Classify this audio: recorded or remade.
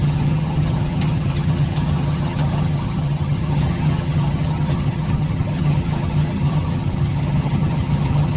remade